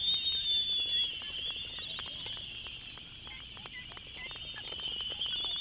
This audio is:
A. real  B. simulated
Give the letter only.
A